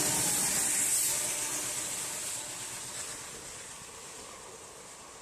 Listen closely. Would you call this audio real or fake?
real